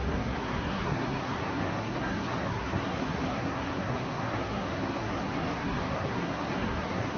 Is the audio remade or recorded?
remade